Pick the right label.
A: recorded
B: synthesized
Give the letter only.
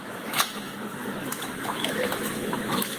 B